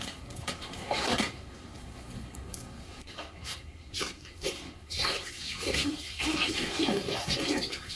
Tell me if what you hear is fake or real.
fake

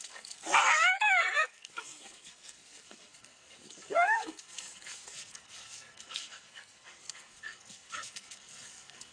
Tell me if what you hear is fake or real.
fake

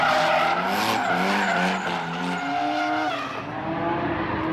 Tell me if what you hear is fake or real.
real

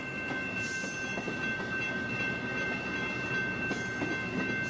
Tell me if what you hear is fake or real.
real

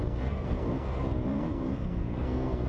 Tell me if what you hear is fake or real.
fake